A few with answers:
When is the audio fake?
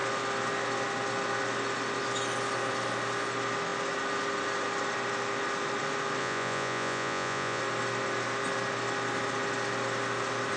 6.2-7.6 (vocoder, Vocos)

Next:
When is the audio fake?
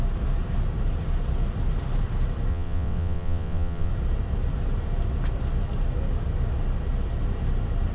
2.5-3.9 (vocoder, WaveNeXt)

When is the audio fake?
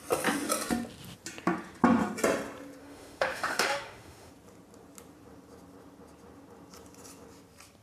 2.8-4.3 (autoencoder, DAC-VAE)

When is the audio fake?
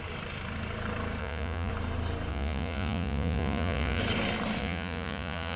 1.2-1.7 (vocoder, Vocos); 2.3-4.0; 4.6-5.6